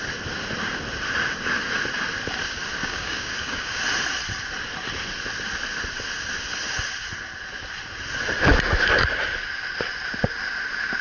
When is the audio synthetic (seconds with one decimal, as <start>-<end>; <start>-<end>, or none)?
2.8-3.8